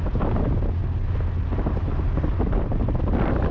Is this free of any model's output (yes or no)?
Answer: yes